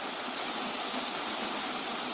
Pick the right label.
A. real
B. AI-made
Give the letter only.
A